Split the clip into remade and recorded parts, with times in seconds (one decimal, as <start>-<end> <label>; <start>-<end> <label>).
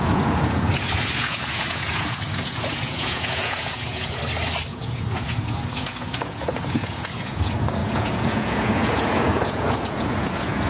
0.0-4.2 remade; 4.2-4.7 recorded; 4.7-10.7 remade